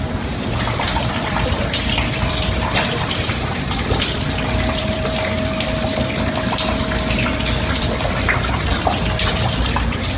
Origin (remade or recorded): remade